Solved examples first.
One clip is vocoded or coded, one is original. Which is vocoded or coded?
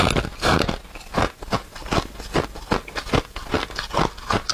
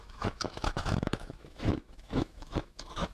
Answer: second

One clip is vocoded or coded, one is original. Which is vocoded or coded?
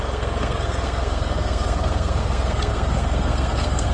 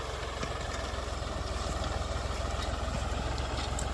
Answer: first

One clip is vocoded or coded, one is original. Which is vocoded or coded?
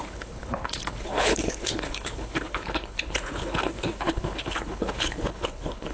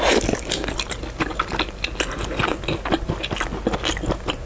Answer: first